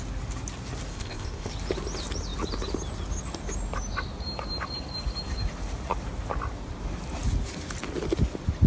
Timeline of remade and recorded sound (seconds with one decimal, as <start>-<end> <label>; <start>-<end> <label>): 0.0-0.9 recorded; 0.9-1.5 remade; 1.5-8.7 recorded